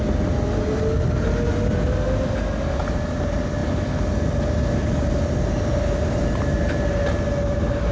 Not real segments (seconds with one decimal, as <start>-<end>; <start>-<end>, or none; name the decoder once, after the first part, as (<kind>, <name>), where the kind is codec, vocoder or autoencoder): none